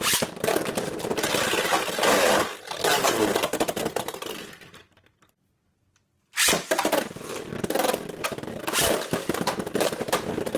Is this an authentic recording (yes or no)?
yes